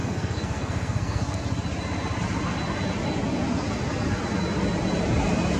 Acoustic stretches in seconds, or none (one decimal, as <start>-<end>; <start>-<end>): 1.4-5.6